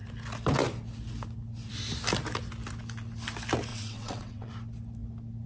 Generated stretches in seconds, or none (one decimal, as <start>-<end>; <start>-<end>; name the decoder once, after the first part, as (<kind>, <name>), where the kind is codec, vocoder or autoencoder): 3.7-4.5 (vocoder, WaveNeXt)